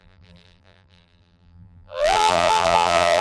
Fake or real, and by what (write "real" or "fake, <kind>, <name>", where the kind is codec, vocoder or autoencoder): fake, vocoder, BigVGAN v2